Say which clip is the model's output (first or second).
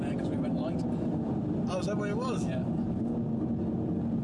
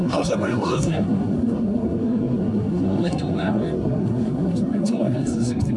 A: second